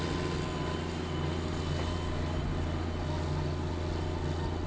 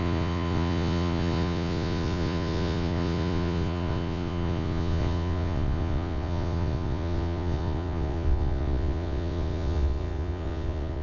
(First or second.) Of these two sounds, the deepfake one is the second